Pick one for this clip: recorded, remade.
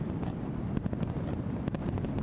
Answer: recorded